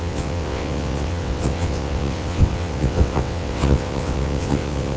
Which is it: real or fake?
fake